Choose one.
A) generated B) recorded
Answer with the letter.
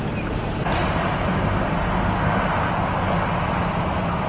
B